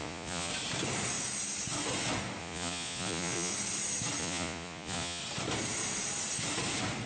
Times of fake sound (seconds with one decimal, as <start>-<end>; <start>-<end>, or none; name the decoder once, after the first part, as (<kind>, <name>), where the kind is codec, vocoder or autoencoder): 0.0-0.5 (vocoder, Vocos); 2.4-3.5; 4.2-5.2